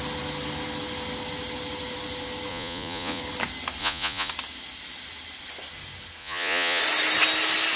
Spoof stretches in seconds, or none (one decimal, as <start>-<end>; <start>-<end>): 2.5-3.2; 3.8-4.3; 6.2-6.8